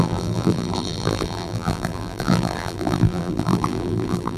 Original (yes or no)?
no